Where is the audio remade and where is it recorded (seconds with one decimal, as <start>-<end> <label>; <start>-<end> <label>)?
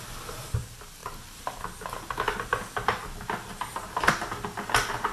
0.0-5.1 recorded